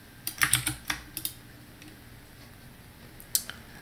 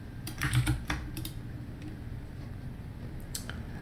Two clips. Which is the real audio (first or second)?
first